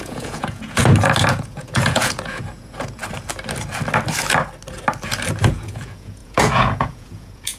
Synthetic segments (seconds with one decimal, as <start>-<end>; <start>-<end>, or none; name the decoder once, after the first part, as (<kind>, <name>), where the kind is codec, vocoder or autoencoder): 0.0-0.8 (vocoder, Vocos); 1.3-3.0; 5.5-7.6